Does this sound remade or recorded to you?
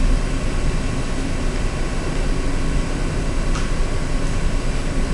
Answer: recorded